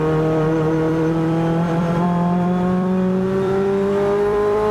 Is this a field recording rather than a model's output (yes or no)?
no